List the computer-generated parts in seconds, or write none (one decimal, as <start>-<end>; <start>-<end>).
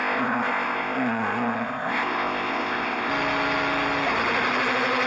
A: 0.0-3.1